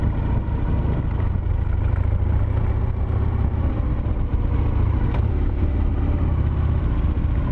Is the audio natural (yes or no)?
yes